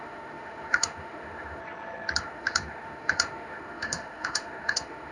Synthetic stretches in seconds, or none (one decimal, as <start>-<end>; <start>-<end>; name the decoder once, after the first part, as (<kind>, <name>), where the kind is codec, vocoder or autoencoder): 0.0-1.6 (autoencoder, DAC-VAE); 2.2-5.1